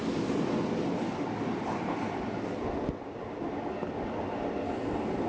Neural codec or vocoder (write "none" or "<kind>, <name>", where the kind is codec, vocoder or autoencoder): none